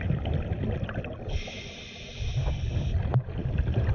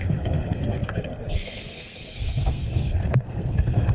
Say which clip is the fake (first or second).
second